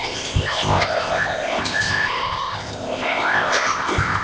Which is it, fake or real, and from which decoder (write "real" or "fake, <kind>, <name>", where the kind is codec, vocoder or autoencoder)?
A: fake, codec, ZipCodec